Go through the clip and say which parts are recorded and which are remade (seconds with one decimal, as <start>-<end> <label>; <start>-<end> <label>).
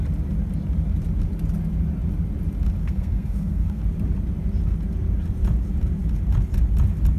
0.0-2.8 recorded; 2.8-3.8 remade; 3.8-7.2 recorded